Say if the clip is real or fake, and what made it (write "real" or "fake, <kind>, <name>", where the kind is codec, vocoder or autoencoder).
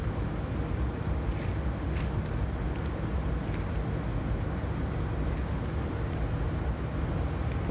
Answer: real